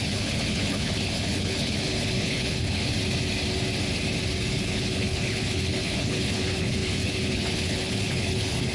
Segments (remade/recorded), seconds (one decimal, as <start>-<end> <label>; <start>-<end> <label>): 0.0-2.9 remade; 2.9-4.5 recorded; 4.5-8.7 remade